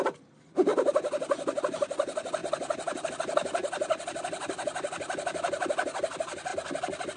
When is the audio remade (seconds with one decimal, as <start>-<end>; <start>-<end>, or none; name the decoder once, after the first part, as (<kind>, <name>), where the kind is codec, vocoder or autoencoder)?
0.0-0.7 (vocoder, BigVGAN v2); 1.6-2.4; 3.1-3.6; 6.1-6.5